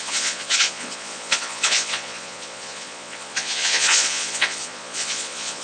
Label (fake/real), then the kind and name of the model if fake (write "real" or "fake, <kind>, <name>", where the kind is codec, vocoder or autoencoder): fake, vocoder, Vocos